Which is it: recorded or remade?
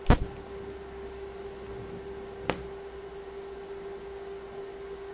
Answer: recorded